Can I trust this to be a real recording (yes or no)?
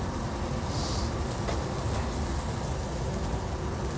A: yes